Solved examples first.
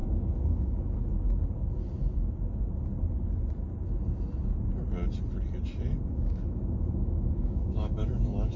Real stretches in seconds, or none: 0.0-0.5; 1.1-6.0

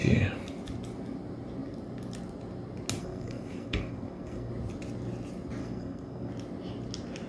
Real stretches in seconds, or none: 0.0-3.0; 4.5-5.6; 6.3-7.3

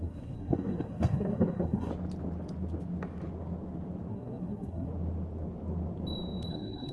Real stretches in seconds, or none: 1.9-4.1; 4.9-6.5

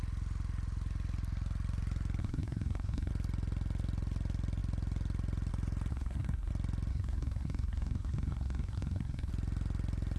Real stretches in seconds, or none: 0.0-2.2; 3.1-5.9; 6.5-6.9; 9.3-10.2

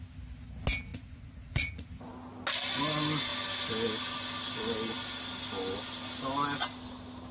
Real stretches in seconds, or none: 0.0-0.9; 1.9-7.3

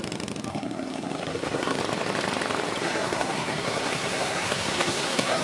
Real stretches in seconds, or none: 0.0-0.5; 1.8-2.8